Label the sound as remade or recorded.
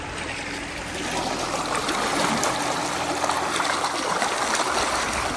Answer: recorded